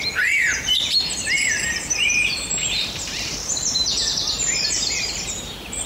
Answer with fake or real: fake